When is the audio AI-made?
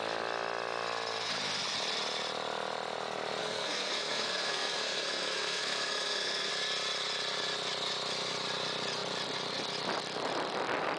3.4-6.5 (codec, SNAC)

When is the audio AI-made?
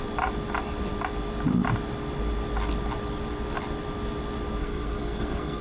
4.6-5.6 (codec, SNAC)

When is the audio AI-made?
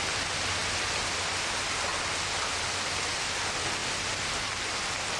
none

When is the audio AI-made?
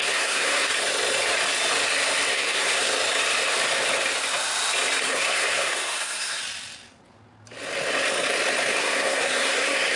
0.0-0.7 (codec, SNAC); 2.3-2.9; 5.0-6.4; 8.8-10.0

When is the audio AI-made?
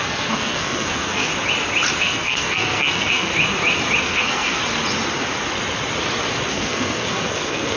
0.0-1.3 (codec, SNAC); 2.0-3.3; 4.0-4.6; 6.5-7.8